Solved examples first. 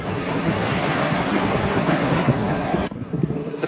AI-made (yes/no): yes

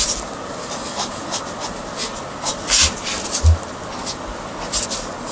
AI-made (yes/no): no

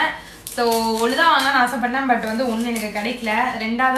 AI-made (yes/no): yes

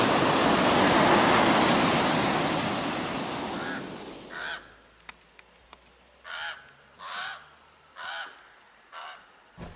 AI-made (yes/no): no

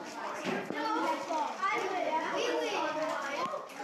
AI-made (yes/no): no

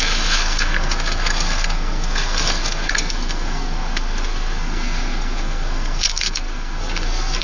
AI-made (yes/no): yes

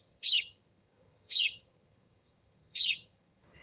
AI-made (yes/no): yes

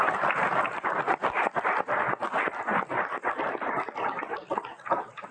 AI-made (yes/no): no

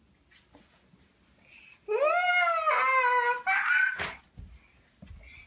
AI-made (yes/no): no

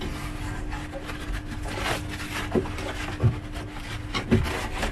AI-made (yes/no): no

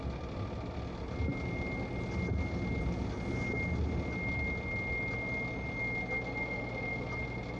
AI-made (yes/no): no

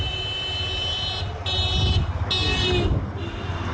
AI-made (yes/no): no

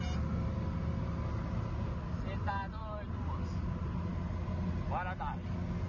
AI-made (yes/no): no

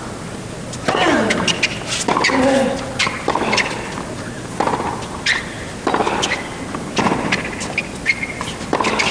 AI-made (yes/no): no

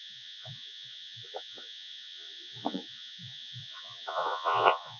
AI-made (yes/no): yes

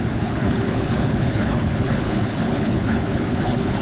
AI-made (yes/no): yes